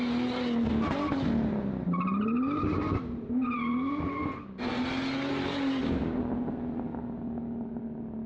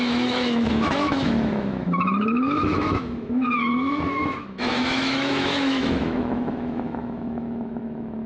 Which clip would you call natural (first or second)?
first